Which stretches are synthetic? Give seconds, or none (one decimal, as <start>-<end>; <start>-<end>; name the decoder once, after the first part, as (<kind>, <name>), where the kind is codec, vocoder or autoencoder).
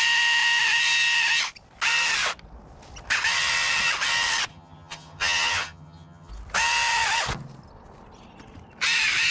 4.5-6.3 (vocoder, HiFi-GAN)